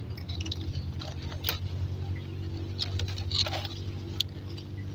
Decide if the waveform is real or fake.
real